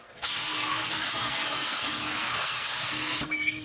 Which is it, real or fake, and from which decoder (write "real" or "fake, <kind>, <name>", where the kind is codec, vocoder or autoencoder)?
fake, codec, SNAC